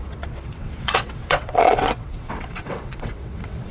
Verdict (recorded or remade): remade